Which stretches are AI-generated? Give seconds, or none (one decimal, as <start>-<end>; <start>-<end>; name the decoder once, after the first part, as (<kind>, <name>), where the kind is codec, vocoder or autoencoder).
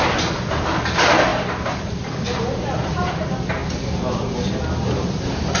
none